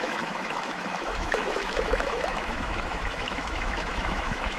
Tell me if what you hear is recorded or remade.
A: remade